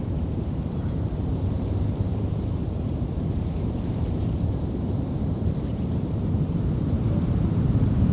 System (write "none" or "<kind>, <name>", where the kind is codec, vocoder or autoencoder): vocoder, BigVGAN v2